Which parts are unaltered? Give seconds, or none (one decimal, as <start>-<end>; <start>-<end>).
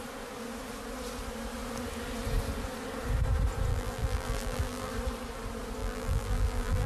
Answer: 0.0-3.7; 4.9-5.8